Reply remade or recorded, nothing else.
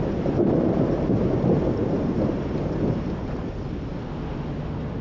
recorded